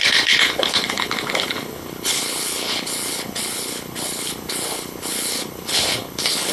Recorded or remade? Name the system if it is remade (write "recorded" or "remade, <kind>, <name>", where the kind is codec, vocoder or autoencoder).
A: remade, codec, HILCodec